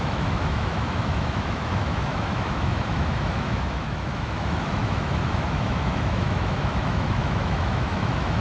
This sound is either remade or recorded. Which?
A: remade